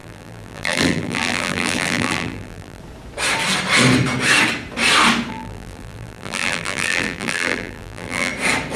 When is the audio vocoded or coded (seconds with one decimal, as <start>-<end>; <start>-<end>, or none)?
0.0-2.8; 5.3-8.3